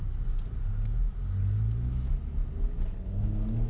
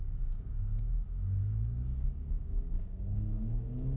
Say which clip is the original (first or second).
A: first